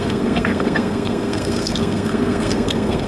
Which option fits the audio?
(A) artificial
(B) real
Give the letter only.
A